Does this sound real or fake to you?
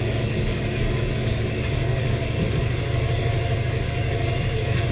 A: fake